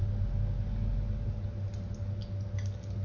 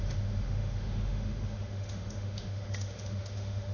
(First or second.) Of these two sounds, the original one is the first